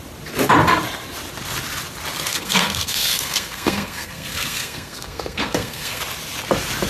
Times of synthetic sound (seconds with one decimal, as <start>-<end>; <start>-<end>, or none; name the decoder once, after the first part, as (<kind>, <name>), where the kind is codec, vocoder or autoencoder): 2.3-6.0 (codec, SNAC)